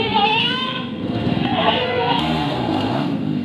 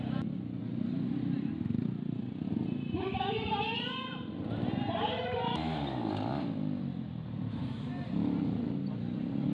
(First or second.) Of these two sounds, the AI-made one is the first